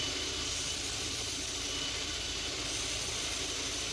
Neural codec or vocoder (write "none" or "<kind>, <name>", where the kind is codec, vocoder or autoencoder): none